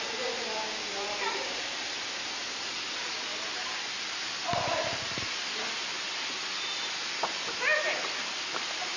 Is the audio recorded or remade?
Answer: recorded